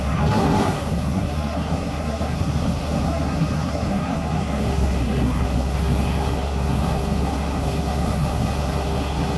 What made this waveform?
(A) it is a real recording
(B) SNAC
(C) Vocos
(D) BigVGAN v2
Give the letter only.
B